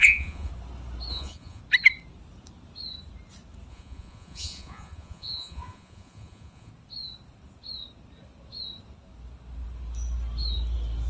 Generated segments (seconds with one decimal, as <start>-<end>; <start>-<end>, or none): 0.0-0.5; 1.1-1.6; 3.7-6.7